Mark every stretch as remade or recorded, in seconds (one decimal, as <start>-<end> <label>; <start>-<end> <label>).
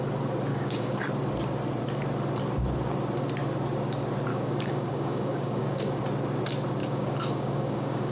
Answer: 0.0-0.5 recorded; 0.5-1.1 remade; 1.1-4.3 recorded; 4.3-6.0 remade; 6.0-6.8 recorded; 6.8-8.1 remade